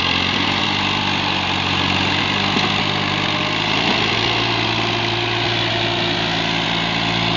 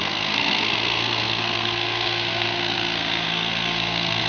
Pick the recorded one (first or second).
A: first